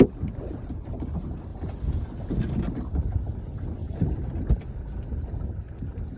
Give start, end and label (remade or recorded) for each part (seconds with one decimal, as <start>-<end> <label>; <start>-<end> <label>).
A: 0.0-6.2 recorded